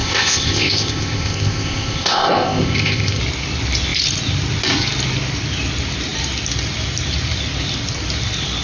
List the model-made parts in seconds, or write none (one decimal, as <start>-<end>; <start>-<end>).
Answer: 0.0-3.2